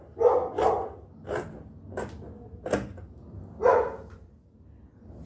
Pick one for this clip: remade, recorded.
recorded